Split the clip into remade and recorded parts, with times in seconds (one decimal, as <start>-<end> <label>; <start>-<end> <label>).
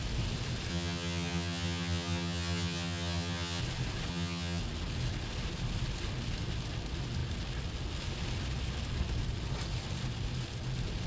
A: 0.0-0.7 recorded; 0.7-3.6 remade; 3.6-4.1 recorded; 4.1-4.6 remade; 4.6-11.1 recorded